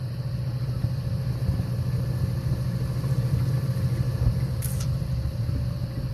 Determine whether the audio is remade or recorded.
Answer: recorded